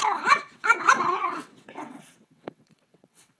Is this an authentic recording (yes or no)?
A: no